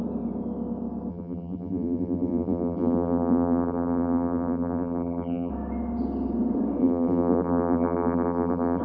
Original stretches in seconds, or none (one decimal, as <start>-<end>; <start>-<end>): 0.0-1.1; 5.5-6.8